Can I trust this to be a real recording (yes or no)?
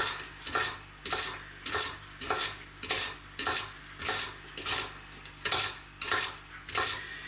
yes